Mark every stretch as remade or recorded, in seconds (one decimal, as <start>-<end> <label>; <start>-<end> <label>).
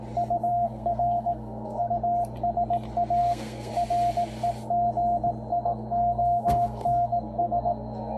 0.0-0.5 recorded; 0.5-1.9 remade; 1.9-3.2 recorded; 3.2-3.7 remade; 3.7-5.5 recorded; 5.5-8.2 remade